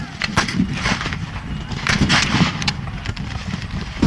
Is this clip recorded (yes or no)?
no